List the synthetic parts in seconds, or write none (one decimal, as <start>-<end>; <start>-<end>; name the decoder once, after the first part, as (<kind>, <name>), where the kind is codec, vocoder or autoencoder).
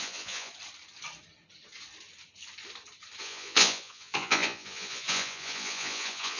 0.0-0.5 (vocoder, Vocos); 3.2-6.4